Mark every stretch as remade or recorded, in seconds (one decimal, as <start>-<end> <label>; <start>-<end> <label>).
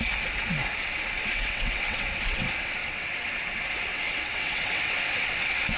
0.0-1.2 recorded; 1.2-3.4 remade; 3.4-3.9 recorded; 3.9-5.8 remade